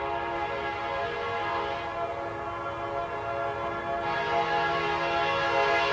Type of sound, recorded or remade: recorded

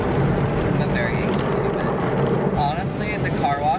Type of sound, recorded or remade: recorded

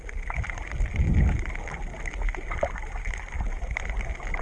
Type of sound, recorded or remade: recorded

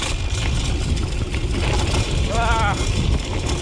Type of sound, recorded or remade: recorded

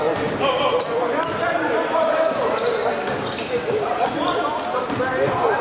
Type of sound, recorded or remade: recorded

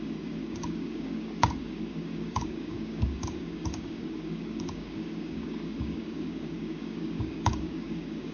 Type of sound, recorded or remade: remade